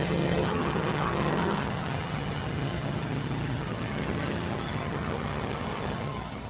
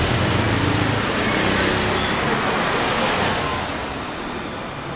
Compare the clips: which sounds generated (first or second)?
first